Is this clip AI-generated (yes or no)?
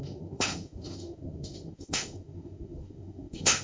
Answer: yes